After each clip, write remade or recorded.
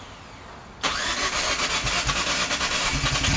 recorded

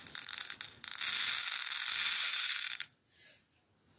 recorded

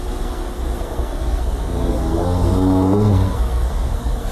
remade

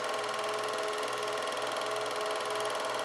recorded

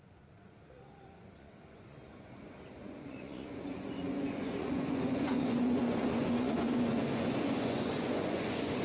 remade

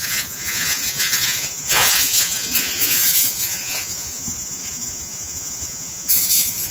remade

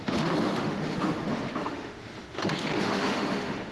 remade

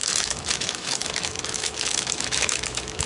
remade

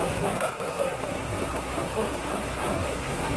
remade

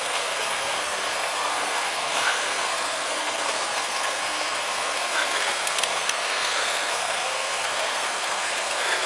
remade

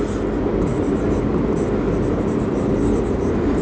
recorded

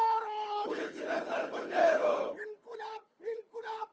remade